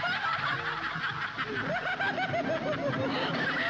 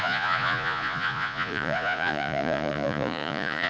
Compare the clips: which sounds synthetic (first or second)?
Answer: second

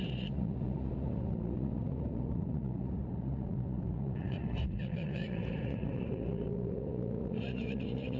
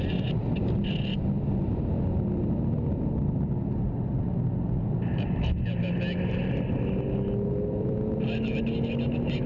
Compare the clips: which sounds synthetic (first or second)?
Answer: first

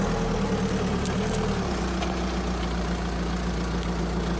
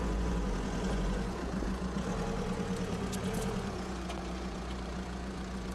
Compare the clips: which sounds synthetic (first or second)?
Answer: second